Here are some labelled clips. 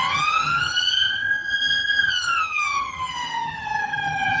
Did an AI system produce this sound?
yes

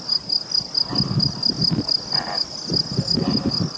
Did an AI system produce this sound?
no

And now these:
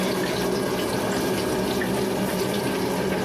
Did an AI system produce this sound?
no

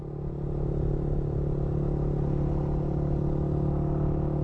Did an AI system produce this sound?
no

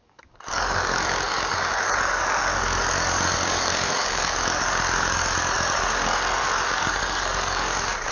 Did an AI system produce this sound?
yes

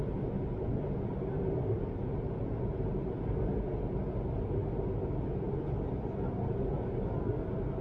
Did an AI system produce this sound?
no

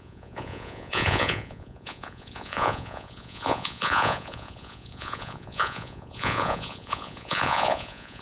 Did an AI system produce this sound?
yes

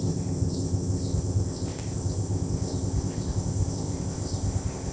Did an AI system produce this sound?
yes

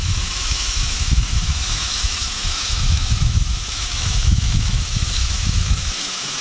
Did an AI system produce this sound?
yes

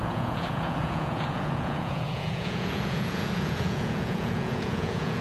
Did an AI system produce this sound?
yes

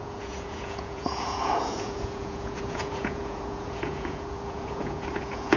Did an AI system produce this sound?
yes